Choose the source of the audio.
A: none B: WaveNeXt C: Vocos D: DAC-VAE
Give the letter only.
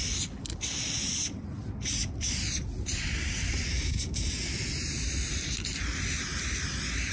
A